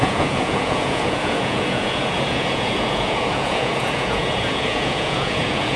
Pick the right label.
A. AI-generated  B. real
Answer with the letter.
A